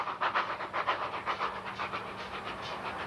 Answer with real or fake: real